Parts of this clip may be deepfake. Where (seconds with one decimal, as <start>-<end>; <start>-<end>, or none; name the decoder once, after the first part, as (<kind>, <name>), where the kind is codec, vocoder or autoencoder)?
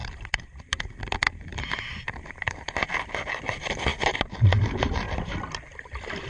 0.0-0.6 (vocoder, BigVGAN v2); 1.5-2.8